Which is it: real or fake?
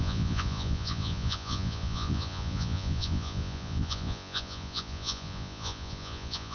fake